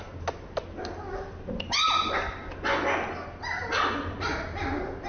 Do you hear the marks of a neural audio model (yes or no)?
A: no